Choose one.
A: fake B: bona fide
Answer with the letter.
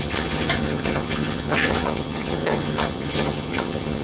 A